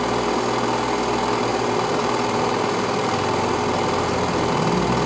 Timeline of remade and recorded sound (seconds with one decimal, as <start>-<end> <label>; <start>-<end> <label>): 0.0-1.5 recorded; 1.5-4.5 remade; 4.5-5.1 recorded